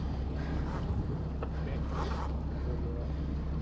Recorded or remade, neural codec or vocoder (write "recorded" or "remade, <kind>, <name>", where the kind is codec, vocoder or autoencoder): recorded